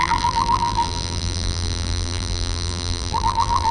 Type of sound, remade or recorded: remade